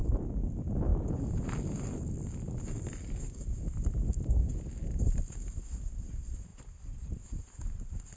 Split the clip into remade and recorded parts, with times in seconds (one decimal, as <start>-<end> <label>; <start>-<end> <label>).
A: 0.0-8.2 recorded